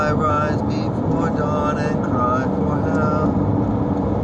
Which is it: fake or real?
real